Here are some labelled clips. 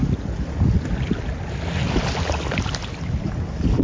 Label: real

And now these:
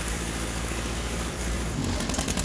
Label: fake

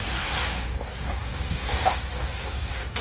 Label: fake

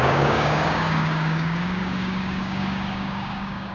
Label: fake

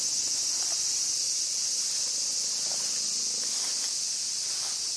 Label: real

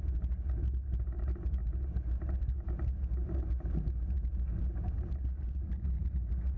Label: real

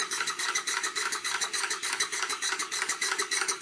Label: fake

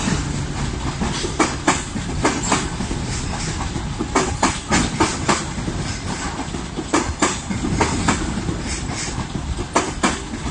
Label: real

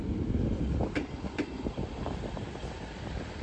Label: real